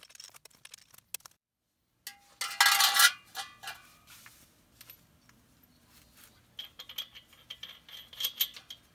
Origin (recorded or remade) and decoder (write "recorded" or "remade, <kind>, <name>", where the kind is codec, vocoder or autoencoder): recorded